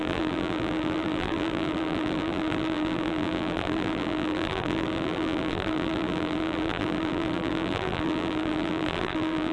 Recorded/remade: remade